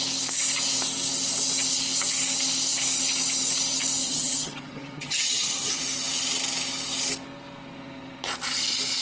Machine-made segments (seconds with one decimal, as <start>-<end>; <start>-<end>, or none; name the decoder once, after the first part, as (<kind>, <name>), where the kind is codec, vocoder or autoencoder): 4.0-5.8 (vocoder, HiFi-GAN)